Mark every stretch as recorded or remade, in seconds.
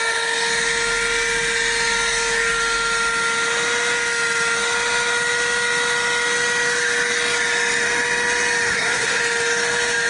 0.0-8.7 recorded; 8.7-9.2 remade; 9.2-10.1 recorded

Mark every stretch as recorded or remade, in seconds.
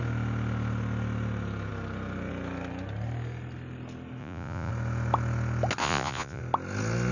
0.0-4.2 recorded; 4.2-4.7 remade; 4.7-5.8 recorded; 5.8-6.4 remade; 6.4-7.1 recorded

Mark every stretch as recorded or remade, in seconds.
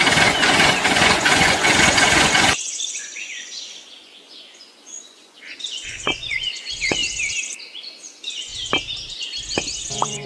0.0-7.0 remade; 7.0-7.8 recorded; 7.8-8.5 remade; 8.5-9.8 recorded; 9.8-10.3 remade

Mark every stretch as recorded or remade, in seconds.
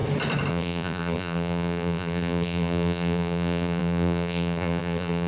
0.0-0.5 recorded; 0.5-5.3 remade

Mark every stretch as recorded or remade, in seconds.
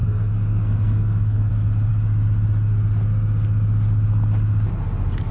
0.0-1.5 remade; 1.5-5.3 recorded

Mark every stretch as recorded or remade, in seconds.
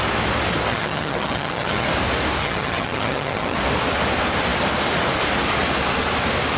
0.0-0.7 recorded; 0.7-1.9 remade; 1.9-2.4 recorded; 2.4-3.6 remade; 3.6-6.6 recorded